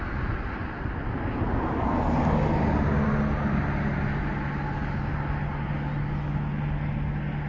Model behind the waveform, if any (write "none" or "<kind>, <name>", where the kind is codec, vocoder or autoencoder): none